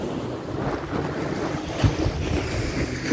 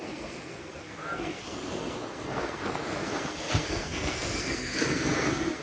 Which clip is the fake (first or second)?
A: second